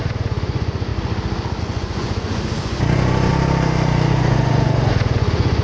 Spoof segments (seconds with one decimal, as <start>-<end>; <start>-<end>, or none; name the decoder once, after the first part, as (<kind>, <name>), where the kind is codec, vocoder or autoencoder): 0.0-0.9 (vocoder, Vocos); 1.6-3.3; 4.1-5.6